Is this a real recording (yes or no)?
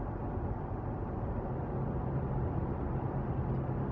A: yes